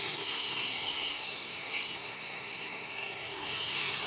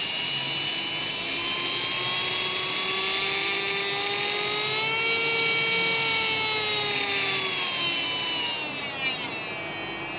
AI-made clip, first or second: first